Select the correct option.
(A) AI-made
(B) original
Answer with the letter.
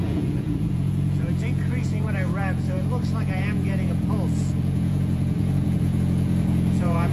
A